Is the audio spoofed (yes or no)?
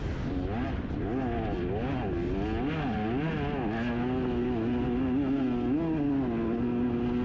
no